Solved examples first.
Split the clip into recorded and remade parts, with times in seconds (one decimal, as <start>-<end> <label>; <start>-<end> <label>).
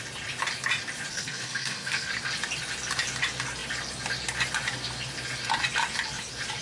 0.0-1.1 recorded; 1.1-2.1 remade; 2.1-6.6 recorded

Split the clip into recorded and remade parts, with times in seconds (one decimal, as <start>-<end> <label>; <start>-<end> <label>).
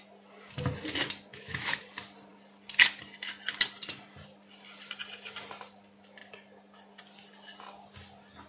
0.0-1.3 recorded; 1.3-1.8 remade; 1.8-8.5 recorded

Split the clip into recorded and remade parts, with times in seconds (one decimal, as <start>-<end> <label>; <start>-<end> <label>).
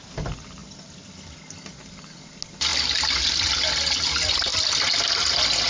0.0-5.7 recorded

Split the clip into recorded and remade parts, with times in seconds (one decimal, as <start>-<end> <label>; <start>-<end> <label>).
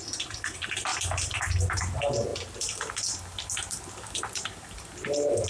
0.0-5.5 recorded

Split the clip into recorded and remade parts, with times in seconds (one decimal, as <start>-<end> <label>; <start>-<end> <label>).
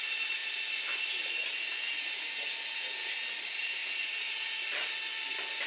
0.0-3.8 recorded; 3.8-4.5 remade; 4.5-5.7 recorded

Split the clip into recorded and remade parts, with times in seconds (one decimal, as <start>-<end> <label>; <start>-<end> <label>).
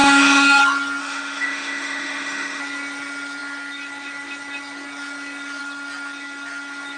0.0-0.6 remade; 0.6-1.0 recorded; 1.0-2.6 remade; 2.6-7.0 recorded